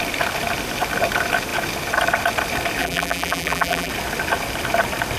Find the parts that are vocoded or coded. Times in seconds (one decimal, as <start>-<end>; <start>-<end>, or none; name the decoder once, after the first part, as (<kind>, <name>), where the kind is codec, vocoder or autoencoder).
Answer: 2.8-3.9 (vocoder, BigVGAN v2)